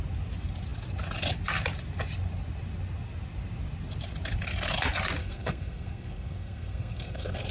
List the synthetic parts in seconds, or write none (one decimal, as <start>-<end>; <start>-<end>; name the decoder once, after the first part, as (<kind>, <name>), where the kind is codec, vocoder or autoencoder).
5.2-7.5 (codec, SNAC)